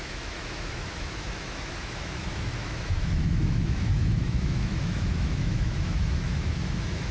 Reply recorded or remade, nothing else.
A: remade